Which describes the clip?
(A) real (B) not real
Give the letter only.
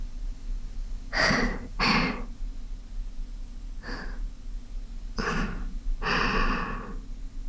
A